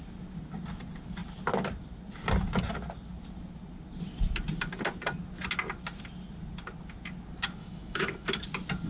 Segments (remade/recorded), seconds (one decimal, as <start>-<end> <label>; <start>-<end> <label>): 0.0-7.6 recorded; 7.6-8.4 remade; 8.4-8.9 recorded

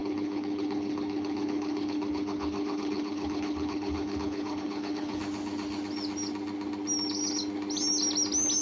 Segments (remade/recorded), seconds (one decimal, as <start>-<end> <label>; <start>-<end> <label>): 0.0-5.2 remade; 5.2-8.6 recorded

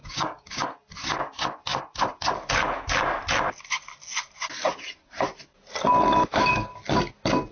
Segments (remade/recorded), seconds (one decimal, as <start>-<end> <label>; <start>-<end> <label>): 0.0-0.6 remade; 0.6-6.2 recorded; 6.2-7.0 remade; 7.0-7.5 recorded

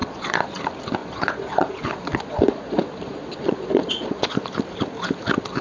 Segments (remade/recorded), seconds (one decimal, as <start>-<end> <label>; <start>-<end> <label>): 0.0-0.6 remade; 0.6-1.0 recorded; 1.0-4.4 remade; 4.4-5.6 recorded

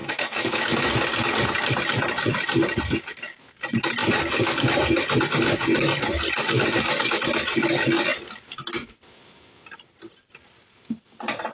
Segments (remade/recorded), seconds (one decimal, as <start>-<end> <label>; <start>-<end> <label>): 0.0-0.9 remade; 0.9-11.5 recorded

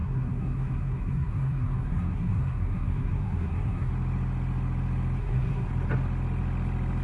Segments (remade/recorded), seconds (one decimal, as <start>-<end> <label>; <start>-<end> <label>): 0.0-3.9 remade; 3.9-5.2 recorded; 5.2-5.7 remade; 5.7-7.0 recorded

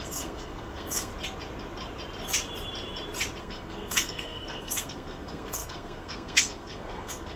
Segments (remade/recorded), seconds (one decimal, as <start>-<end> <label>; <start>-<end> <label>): 0.0-1.1 remade; 1.1-3.4 recorded; 3.4-7.4 remade

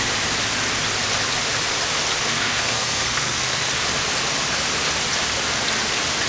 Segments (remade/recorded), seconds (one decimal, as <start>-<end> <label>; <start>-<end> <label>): 0.0-2.3 recorded; 2.3-3.7 remade; 3.7-6.3 recorded